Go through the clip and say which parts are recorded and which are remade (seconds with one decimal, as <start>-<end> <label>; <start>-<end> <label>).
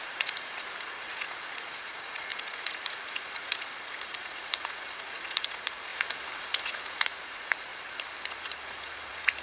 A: 0.0-7.7 remade; 7.7-8.3 recorded; 8.3-9.4 remade